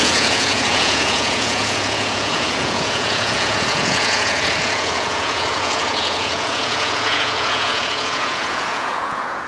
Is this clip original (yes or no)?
no